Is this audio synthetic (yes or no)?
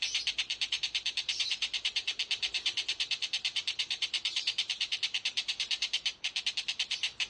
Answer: yes